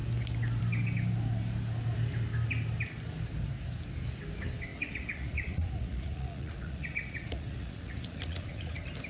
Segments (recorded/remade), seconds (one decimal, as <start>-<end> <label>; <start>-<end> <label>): 0.0-4.7 recorded; 4.7-8.7 remade; 8.7-9.1 recorded